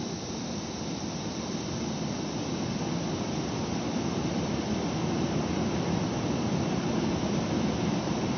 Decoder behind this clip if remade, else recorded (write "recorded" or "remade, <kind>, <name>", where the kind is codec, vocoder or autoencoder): recorded